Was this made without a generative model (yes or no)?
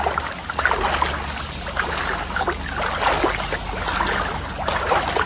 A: yes